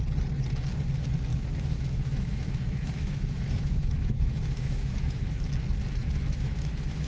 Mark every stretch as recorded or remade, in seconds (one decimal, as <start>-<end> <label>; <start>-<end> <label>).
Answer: 0.0-1.3 recorded; 1.3-5.3 remade; 5.3-6.0 recorded; 6.0-7.1 remade